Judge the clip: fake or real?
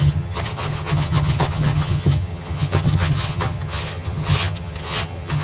fake